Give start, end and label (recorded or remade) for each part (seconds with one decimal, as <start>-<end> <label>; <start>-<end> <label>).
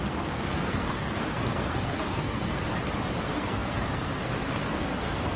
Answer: 0.0-2.6 remade; 2.6-3.2 recorded; 3.2-5.4 remade